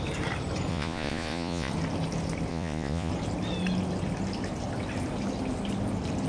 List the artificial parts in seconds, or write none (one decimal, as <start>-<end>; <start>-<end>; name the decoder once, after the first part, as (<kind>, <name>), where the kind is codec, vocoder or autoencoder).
0.7-1.7 (vocoder, Vocos); 2.5-3.1